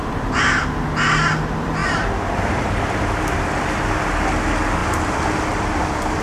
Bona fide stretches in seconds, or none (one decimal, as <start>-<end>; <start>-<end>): 0.5-1.8; 3.0-6.2